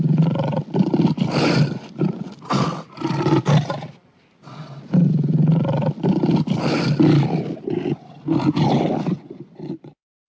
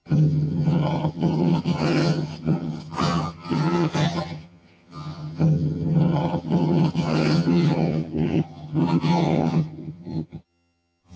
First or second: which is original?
first